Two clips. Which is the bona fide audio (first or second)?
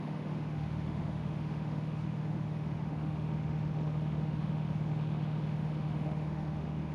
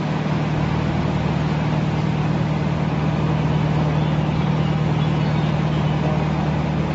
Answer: second